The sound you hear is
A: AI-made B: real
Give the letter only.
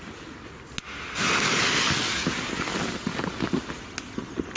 B